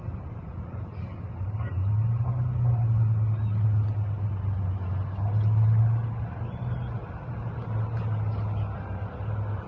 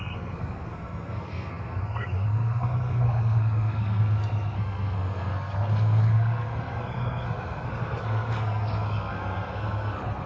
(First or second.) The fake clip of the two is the second